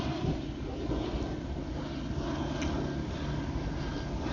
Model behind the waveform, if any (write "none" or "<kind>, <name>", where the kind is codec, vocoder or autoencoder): none